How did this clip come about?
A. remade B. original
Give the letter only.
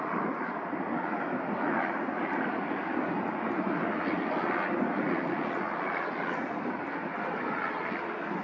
B